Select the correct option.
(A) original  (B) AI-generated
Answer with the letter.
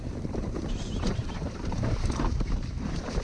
B